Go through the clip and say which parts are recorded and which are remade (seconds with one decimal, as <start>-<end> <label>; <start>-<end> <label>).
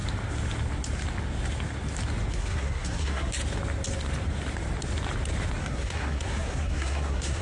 0.0-2.3 recorded; 2.3-3.3 remade; 3.3-5.6 recorded; 5.6-7.4 remade